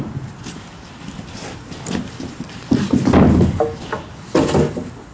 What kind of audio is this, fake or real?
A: real